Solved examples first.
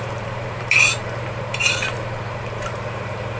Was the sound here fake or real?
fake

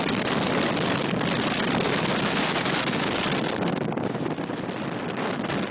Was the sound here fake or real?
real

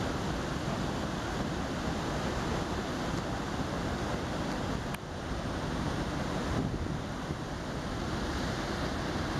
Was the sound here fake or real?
real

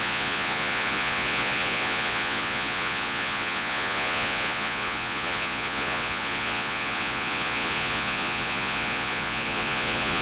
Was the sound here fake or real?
fake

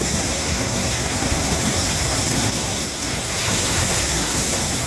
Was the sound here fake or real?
fake